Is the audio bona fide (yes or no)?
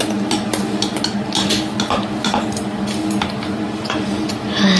yes